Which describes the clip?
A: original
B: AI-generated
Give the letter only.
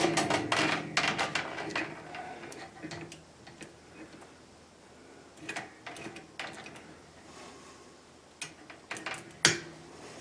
A